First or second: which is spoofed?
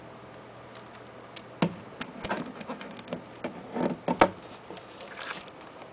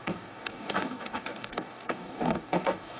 second